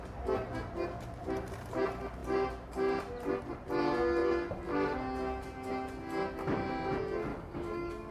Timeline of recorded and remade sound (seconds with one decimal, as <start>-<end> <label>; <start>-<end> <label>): 0.0-7.3 recorded; 7.3-8.1 remade